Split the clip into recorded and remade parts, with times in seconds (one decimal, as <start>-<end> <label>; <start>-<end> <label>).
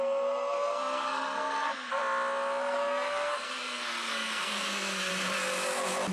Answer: 0.0-2.0 remade; 2.0-2.6 recorded; 2.6-5.1 remade; 5.1-6.1 recorded